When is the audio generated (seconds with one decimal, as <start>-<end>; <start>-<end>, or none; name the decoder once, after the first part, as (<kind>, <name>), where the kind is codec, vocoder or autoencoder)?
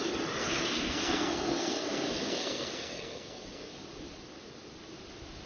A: 0.4-3.7 (codec, SNAC)